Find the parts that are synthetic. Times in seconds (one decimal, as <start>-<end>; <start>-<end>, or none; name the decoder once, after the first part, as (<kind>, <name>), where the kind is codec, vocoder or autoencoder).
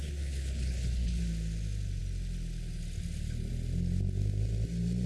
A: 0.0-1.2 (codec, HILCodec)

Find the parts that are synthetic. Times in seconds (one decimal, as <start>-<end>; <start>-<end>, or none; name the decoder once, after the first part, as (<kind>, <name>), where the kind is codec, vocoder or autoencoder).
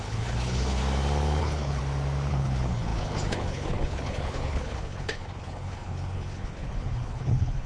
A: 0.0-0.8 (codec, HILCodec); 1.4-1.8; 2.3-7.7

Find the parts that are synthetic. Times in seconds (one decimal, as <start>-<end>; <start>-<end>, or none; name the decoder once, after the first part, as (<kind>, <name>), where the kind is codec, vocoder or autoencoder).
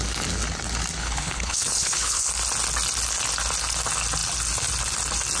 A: 1.0-2.3 (codec, HILCodec)